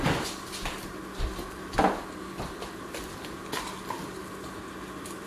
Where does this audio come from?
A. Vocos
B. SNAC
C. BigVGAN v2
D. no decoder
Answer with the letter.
D